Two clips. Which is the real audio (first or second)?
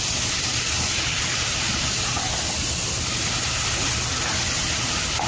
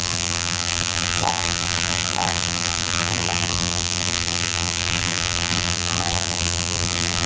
first